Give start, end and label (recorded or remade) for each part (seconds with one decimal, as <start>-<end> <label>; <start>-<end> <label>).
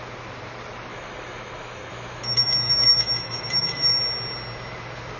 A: 0.0-0.9 recorded; 0.9-4.0 remade; 4.0-5.2 recorded